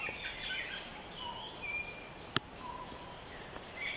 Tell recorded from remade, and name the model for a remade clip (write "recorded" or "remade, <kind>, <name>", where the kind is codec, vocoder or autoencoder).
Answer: recorded